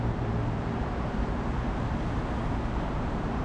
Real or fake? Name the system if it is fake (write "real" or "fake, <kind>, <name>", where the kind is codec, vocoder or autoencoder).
fake, vocoder, BigVGAN v2